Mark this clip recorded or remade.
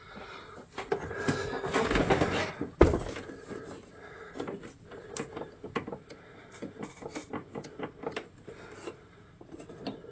recorded